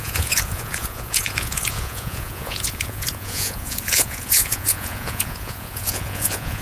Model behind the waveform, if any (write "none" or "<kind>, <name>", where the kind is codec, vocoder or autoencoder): vocoder, Vocos